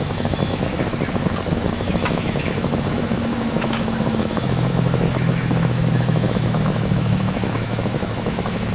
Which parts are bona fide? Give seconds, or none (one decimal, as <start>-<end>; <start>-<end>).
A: 0.9-1.5